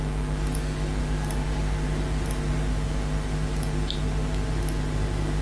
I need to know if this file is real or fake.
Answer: real